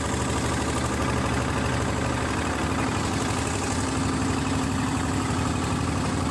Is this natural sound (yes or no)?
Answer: yes